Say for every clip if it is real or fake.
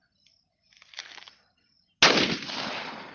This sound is real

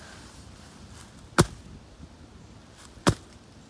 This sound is real